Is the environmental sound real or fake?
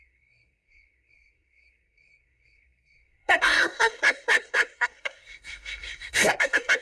fake